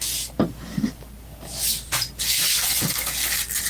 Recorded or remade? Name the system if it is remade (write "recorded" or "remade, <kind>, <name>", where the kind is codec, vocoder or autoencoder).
recorded